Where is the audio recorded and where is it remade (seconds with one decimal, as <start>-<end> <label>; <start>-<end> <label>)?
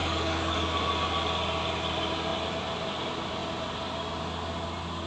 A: 0.0-0.7 remade; 0.7-5.1 recorded